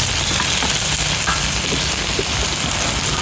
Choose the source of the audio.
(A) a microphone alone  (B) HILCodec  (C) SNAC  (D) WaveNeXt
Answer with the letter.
A